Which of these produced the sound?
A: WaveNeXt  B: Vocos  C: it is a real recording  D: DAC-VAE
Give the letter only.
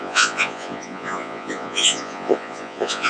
B